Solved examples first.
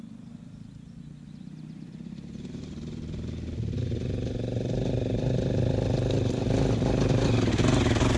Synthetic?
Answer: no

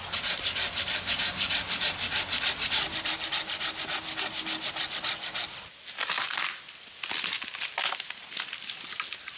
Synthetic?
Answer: no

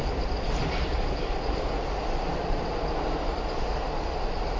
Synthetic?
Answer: no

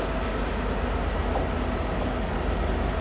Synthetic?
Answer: no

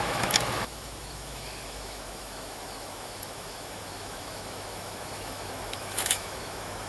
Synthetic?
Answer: yes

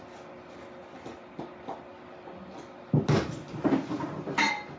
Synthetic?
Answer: no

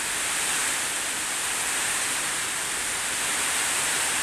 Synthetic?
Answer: yes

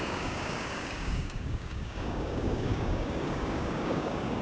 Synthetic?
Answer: yes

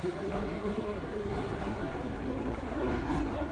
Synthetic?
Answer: yes